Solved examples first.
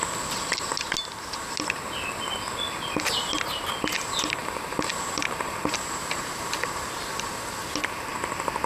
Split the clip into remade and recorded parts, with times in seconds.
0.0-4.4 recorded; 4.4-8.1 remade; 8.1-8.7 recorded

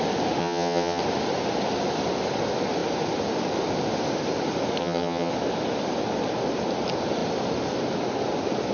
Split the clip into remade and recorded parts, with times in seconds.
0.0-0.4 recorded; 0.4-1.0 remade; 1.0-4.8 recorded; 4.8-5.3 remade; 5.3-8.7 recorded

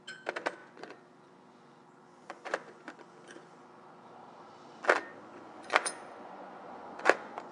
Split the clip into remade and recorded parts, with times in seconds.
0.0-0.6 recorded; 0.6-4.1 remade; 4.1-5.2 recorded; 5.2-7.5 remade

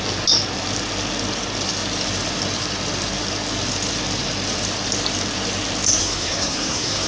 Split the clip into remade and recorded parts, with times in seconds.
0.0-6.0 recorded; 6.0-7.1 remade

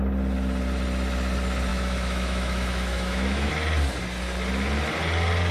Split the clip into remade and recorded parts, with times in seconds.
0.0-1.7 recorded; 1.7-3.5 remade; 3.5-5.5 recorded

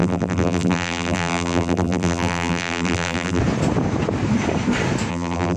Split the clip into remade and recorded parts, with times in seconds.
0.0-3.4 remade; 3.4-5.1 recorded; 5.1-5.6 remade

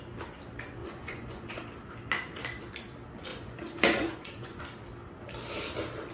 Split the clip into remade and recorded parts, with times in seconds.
0.0-0.8 recorded; 0.8-1.5 remade; 1.5-3.3 recorded; 3.3-4.6 remade; 4.6-6.1 recorded